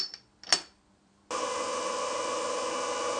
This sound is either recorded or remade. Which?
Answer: recorded